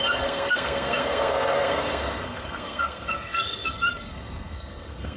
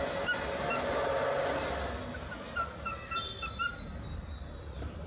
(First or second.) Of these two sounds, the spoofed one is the first